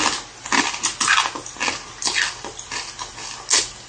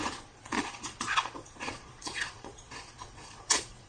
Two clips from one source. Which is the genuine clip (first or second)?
first